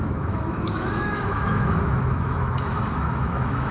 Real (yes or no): no